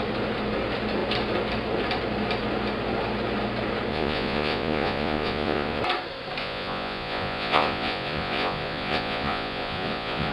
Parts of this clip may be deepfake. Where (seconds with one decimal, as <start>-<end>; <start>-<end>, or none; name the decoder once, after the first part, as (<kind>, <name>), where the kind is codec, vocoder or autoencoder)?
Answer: 3.9-5.8 (vocoder, Vocos); 6.4-10.3